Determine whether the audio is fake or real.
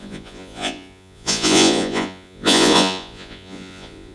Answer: fake